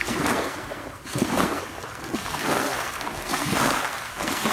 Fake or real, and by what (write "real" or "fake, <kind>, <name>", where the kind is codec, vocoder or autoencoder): fake, codec, SNAC